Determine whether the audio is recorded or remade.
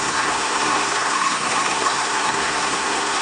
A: remade